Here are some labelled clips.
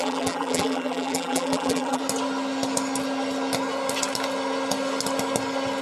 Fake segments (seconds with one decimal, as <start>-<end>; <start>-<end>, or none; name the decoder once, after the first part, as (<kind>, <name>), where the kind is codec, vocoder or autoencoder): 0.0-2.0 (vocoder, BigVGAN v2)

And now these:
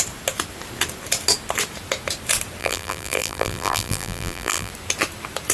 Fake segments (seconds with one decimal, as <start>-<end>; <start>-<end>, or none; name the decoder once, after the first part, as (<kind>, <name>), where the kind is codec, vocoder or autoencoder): 2.6-4.7 (vocoder, BigVGAN v2)

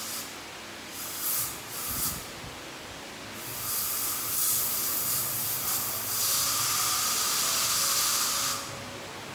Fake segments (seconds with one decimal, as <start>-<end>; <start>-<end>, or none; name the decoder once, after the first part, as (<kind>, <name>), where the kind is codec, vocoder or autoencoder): none